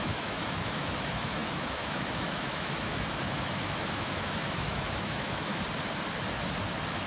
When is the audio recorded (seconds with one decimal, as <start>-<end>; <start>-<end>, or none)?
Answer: 5.5-7.1